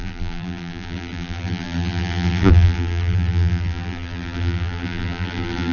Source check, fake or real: fake